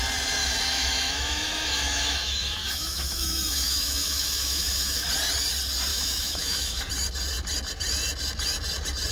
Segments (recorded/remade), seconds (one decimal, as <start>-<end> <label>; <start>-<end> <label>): 0.0-0.4 recorded; 0.4-5.1 remade; 5.1-5.9 recorded; 5.9-6.8 remade; 6.8-9.1 recorded